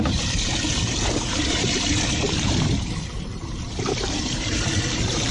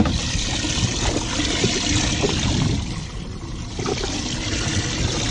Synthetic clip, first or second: first